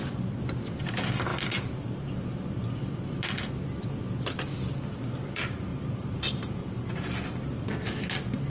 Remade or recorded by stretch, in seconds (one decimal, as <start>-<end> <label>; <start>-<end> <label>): 0.0-0.7 remade; 0.7-5.7 recorded; 5.7-7.7 remade; 7.7-8.5 recorded